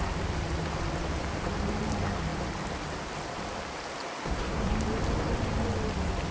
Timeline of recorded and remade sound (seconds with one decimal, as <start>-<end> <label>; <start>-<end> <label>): 0.0-4.2 recorded; 4.2-4.7 remade; 4.7-6.3 recorded